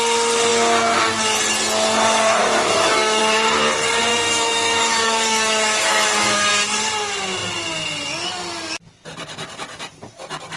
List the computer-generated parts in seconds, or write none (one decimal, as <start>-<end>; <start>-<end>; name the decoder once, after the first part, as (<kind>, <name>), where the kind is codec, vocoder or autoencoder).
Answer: 2.4-3.2 (autoencoder, DAC-VAE); 4.1-6.5

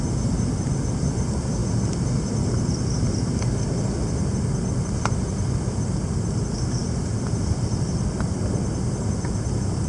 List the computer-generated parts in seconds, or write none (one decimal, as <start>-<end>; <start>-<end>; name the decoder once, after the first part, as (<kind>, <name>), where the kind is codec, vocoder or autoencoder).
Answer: none

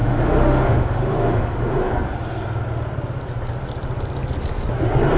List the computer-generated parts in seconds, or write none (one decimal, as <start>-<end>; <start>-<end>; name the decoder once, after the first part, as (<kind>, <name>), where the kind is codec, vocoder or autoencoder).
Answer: 0.0-1.9 (autoencoder, DAC-VAE)

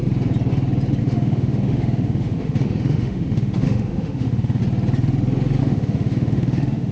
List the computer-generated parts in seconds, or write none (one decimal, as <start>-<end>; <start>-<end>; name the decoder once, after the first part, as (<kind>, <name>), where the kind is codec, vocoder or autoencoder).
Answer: 1.0-4.6 (autoencoder, DAC-VAE); 5.6-6.9

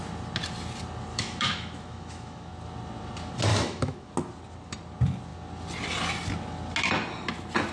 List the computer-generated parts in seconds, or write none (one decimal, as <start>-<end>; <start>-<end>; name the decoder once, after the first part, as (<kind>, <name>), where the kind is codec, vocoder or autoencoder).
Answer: 1.1-2.5 (autoencoder, DAC-VAE); 3.5-4.1